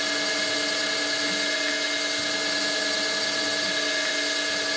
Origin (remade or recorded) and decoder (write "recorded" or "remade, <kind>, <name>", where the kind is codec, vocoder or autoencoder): recorded